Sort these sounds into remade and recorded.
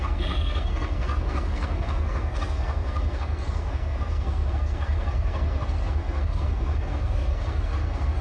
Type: remade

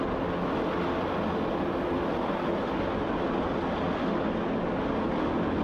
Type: recorded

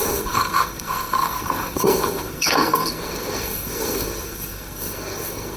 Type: remade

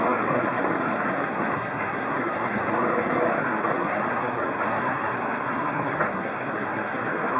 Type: remade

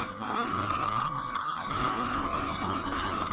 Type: remade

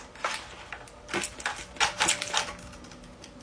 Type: recorded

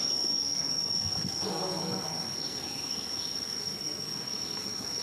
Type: remade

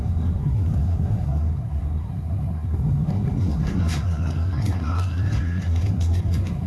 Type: remade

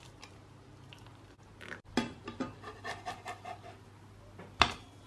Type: recorded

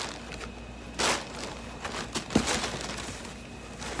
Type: recorded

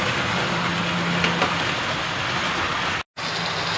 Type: recorded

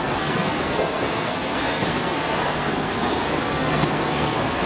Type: remade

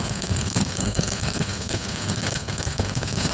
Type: remade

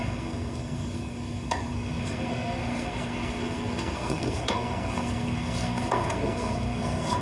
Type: remade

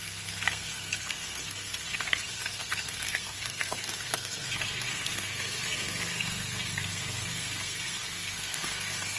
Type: remade